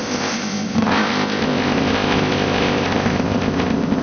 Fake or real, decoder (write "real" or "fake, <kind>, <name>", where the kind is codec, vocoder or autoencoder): fake, codec, ZipCodec